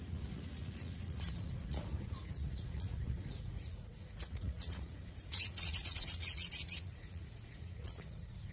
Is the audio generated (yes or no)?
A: yes